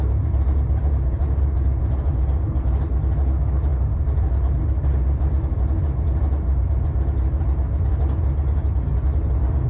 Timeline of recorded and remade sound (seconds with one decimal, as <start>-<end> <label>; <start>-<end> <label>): 0.0-2.9 remade; 2.9-3.7 recorded; 3.7-7.0 remade; 7.0-9.7 recorded